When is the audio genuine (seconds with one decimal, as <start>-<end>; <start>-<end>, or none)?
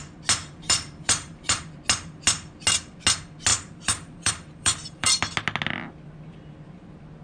0.0-0.4; 1.6-3.5; 5.1-7.2